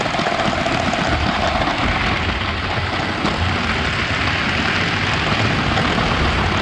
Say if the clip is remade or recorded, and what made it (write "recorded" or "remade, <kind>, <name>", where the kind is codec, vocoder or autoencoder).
recorded